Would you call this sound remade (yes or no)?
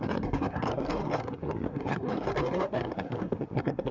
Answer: yes